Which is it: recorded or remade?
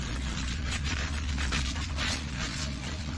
remade